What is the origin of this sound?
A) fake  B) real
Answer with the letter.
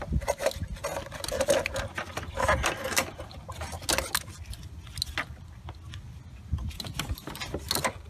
B